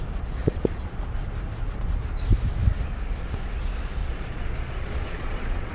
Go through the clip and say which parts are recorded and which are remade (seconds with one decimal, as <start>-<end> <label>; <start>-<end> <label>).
0.0-0.4 recorded; 0.4-1.0 remade; 1.0-4.0 recorded; 4.0-5.7 remade